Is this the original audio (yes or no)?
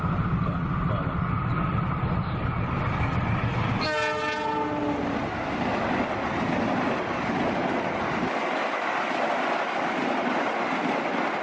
yes